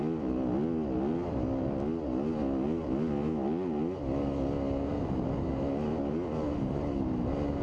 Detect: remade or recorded recorded